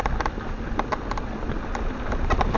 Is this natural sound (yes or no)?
yes